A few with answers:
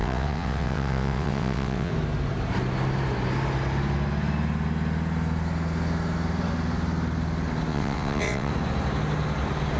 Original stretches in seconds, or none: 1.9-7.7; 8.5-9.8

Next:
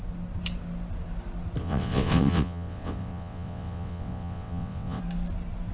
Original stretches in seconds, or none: 0.0-1.6; 5.0-5.7

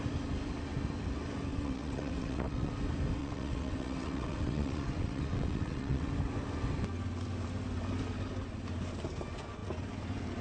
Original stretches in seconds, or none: 0.0-1.5; 2.7-3.2; 6.1-10.4